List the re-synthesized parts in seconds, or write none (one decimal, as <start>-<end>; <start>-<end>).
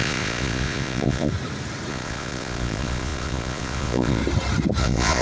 0.0-1.3; 1.9-4.2; 4.8-5.2